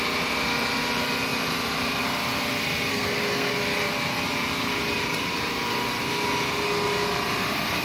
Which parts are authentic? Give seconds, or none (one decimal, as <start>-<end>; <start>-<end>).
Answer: 0.0-2.9; 3.5-7.8